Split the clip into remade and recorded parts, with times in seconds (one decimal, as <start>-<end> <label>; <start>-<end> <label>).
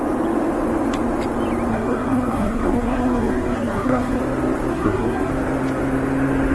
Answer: 0.0-1.7 recorded; 1.7-4.2 remade; 4.2-4.7 recorded; 4.7-5.3 remade; 5.3-6.5 recorded